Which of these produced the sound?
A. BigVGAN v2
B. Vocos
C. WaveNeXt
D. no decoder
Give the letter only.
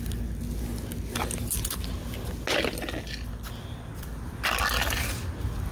D